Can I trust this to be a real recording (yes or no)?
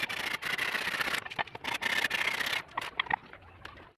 yes